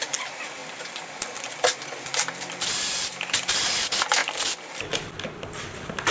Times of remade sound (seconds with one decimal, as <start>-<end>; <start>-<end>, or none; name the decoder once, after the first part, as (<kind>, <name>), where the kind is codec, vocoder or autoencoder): 0.6-3.7 (vocoder, BigVGAN v2)